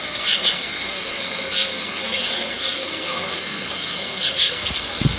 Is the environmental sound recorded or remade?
remade